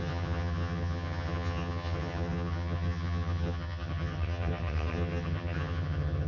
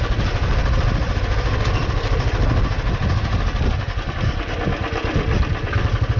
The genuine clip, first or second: second